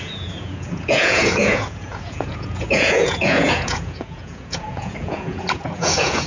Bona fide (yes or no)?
no